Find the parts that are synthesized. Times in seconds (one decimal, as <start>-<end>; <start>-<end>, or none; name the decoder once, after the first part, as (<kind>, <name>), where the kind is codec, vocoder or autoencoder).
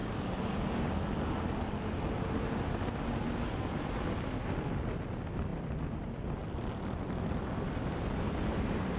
none